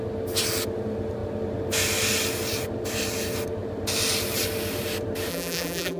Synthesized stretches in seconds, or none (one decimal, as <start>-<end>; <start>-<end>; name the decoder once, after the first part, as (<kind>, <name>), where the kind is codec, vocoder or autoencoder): 5.3-6.0 (vocoder, BigVGAN v2)